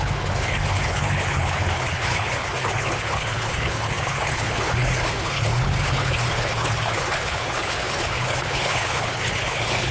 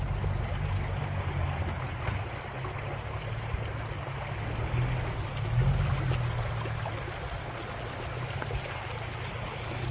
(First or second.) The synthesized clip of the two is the first